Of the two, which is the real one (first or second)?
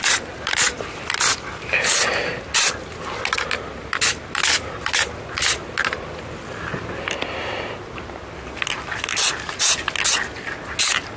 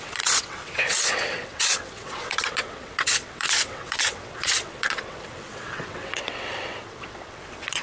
first